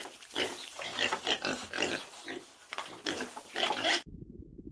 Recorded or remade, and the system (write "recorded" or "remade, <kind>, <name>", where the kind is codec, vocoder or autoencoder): remade, vocoder, BigVGAN v2